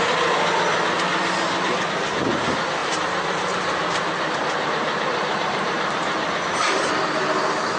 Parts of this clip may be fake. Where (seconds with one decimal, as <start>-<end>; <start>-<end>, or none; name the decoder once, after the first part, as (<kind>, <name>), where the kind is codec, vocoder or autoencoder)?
2.8-6.9 (vocoder, BigVGAN v2)